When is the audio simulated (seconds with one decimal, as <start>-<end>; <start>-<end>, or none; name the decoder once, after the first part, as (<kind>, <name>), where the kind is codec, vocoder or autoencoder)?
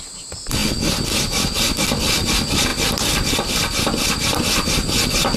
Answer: none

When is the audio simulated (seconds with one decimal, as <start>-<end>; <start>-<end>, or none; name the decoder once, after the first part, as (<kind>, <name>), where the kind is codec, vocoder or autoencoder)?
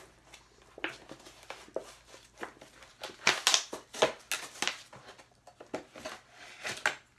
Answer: none